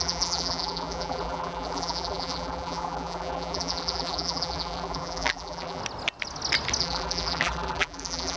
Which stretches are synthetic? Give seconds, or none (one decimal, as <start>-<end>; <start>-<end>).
0.0-5.8; 6.8-8.4